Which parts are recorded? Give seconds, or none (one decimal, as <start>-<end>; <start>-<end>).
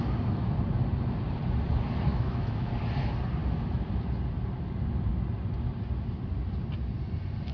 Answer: 0.0-2.1; 2.7-7.5